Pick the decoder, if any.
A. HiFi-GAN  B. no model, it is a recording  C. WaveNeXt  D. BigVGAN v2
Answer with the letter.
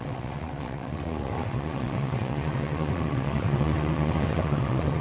C